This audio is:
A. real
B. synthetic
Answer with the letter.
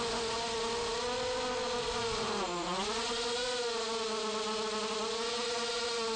A